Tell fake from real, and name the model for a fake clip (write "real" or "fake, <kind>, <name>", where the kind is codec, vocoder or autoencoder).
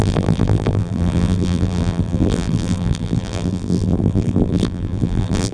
fake, vocoder, BigVGAN v2